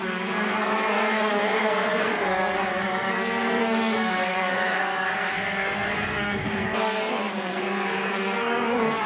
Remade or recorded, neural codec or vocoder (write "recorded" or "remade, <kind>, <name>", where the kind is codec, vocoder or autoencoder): remade, codec, SNAC